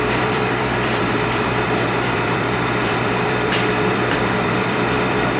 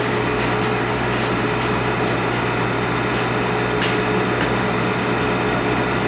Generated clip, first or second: first